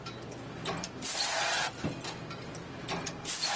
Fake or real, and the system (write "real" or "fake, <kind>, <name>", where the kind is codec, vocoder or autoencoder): real